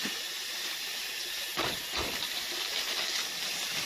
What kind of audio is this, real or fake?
real